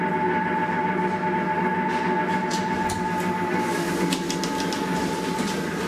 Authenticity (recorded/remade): recorded